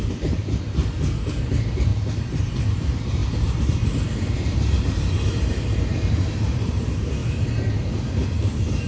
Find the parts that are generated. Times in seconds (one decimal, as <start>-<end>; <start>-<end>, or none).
0.0-0.8; 1.3-1.9; 2.4-7.2; 7.8-8.9

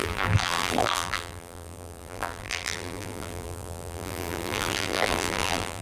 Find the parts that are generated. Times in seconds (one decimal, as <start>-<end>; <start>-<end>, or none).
0.0-5.8

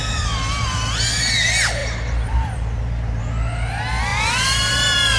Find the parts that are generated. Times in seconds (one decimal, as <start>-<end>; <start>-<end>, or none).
1.8-3.2; 4.1-5.2

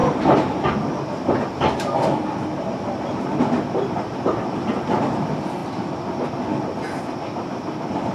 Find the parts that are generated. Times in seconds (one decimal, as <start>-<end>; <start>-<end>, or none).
none

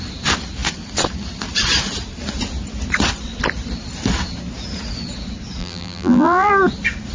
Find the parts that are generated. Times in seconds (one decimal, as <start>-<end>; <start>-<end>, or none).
5.6-6.5

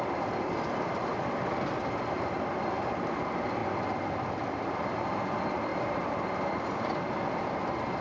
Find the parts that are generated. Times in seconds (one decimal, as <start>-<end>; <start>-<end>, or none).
0.0-5.7; 6.3-8.0

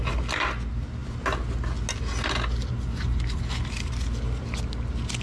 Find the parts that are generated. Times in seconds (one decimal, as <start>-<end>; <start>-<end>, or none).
none